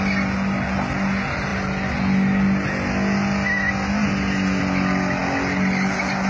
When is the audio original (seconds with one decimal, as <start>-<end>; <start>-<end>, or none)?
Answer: 0.0-6.3